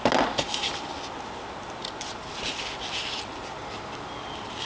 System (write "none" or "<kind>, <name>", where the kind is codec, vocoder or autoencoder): none